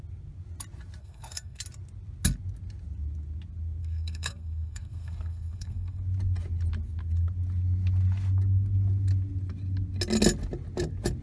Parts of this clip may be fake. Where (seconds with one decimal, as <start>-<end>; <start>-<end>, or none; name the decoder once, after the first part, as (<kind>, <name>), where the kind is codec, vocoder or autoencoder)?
1.0-1.6 (codec, SNAC); 3.8-6.0